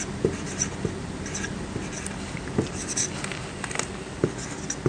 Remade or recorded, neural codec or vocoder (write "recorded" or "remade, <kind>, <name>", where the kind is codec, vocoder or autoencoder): recorded